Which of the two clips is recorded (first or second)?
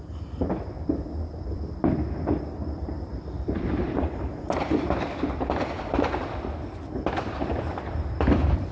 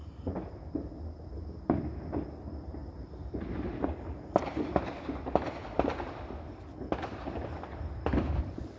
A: second